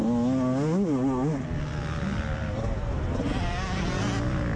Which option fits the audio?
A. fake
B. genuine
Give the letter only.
B